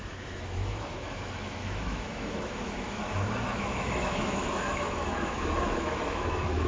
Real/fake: fake